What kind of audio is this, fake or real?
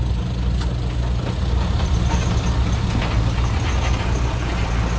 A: real